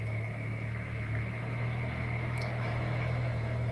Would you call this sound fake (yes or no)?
yes